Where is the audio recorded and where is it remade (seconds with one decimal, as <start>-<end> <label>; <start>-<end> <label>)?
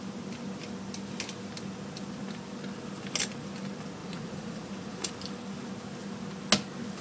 0.0-4.0 recorded; 4.0-5.1 remade; 5.1-7.0 recorded